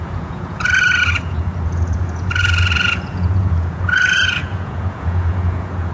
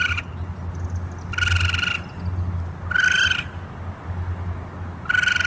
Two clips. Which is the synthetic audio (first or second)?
first